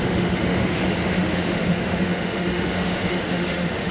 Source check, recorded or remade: remade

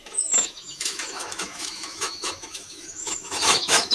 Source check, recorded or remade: remade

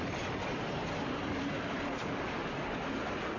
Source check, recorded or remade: recorded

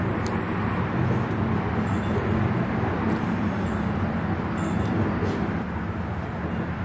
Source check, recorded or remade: recorded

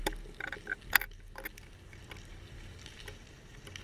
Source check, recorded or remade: recorded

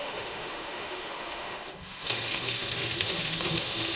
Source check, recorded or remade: remade